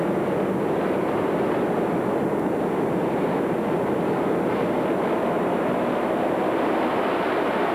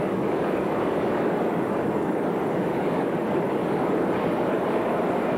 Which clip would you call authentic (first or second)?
first